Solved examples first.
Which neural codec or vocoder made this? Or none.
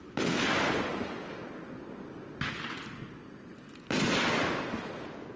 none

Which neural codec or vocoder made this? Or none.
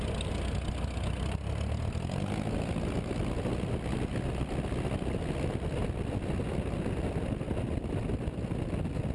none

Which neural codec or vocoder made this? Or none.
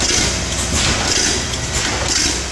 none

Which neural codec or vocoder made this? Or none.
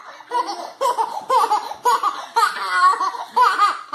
none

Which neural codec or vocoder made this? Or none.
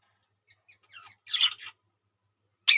none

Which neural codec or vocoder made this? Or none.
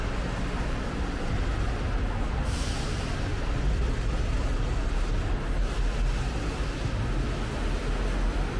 none